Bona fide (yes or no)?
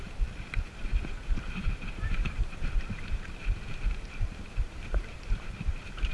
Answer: no